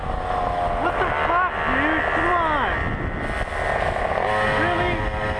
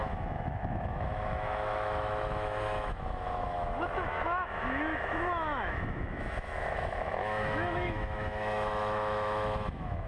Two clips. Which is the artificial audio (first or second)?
second